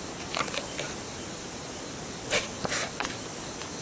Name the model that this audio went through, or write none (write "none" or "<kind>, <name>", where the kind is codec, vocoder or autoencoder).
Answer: none